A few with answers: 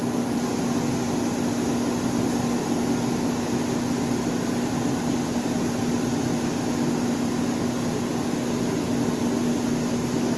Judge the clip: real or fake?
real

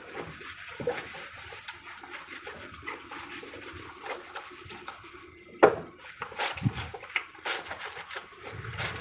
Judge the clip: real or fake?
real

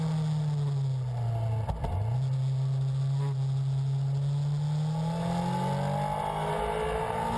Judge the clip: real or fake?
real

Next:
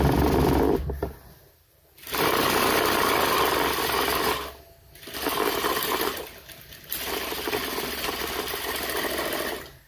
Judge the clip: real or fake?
real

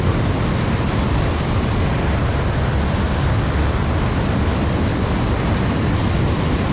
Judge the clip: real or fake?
fake